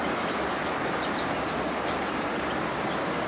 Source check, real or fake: real